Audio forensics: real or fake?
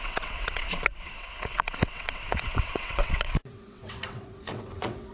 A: fake